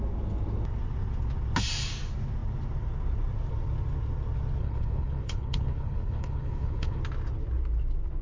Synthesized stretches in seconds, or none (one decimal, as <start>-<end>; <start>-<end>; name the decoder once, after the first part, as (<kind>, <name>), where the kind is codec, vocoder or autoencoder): 4.6-7.0 (codec, HILCodec)